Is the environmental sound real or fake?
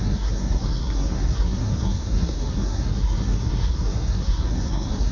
fake